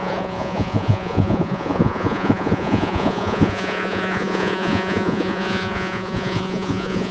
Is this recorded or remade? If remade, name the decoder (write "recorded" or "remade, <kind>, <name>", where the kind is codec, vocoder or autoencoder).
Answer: remade, vocoder, Vocos